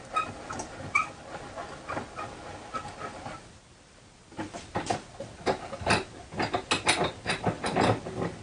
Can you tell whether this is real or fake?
real